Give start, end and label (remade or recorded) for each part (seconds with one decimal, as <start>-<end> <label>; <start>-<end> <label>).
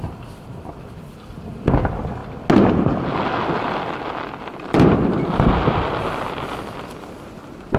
0.0-2.2 remade; 2.2-4.4 recorded; 4.4-7.8 remade